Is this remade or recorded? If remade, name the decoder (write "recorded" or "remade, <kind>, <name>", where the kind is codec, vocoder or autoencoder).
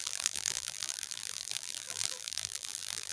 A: remade, vocoder, BigVGAN v2